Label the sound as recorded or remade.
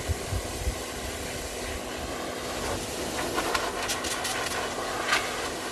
recorded